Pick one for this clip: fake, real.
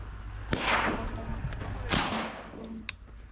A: real